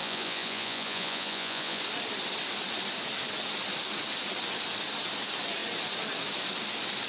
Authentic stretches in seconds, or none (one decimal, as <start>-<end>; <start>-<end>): 1.8-7.1